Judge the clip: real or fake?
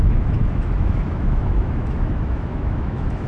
fake